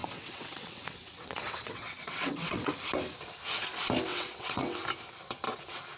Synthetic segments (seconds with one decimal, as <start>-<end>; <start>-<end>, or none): 0.0-2.7; 4.1-4.8